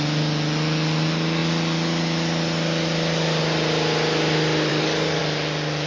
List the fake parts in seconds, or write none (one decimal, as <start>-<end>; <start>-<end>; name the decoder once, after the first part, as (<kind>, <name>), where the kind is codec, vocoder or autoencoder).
4.7-5.2 (codec, DAC)